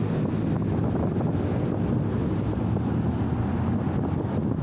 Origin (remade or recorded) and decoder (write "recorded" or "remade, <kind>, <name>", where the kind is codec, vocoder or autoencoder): recorded